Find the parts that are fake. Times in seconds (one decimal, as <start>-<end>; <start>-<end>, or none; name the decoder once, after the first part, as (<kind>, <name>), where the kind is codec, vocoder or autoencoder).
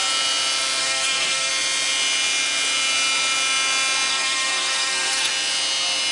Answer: 0.8-1.5 (codec, SNAC); 4.1-5.3